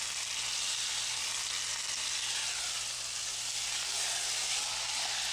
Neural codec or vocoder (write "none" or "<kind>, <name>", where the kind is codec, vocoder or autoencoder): none